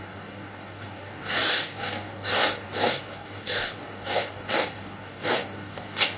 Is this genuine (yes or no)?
no